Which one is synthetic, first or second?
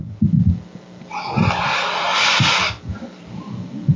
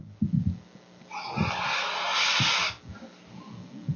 first